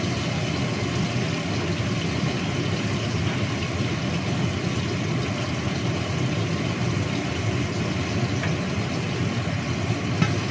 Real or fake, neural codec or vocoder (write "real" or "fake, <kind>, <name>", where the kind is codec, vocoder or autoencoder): real